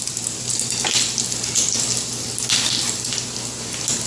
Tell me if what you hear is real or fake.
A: real